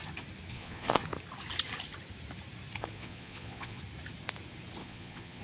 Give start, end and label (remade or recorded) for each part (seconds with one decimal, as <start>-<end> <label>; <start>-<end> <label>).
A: 0.0-0.5 recorded; 0.5-1.0 remade; 1.0-2.8 recorded; 2.8-3.8 remade; 3.8-4.8 recorded; 4.8-5.4 remade